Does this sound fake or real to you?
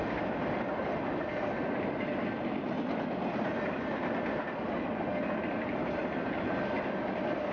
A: real